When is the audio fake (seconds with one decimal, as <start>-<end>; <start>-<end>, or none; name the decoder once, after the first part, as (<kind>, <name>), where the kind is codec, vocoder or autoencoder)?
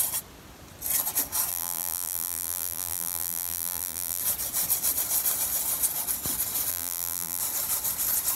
1.5-4.2 (vocoder, BigVGAN v2); 6.7-7.4